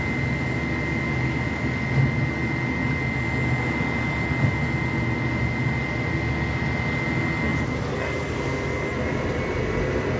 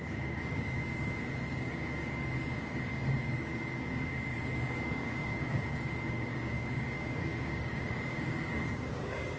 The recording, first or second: first